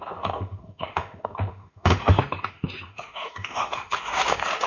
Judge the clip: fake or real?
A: fake